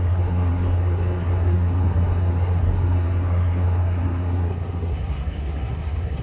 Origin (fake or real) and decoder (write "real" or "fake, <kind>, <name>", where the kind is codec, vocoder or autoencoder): fake, codec, SNAC